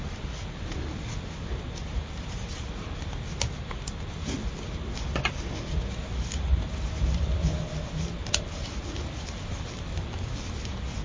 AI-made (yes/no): no